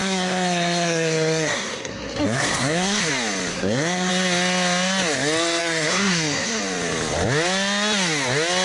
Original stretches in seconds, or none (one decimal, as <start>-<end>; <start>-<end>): 3.1-3.5; 4.1-5.6; 6.6-8.6